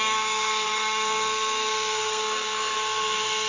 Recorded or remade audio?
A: remade